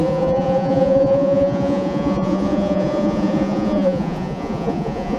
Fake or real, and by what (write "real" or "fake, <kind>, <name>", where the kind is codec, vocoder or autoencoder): fake, vocoder, Vocos